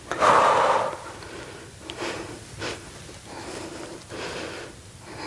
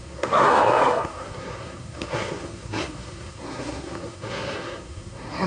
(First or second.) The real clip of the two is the first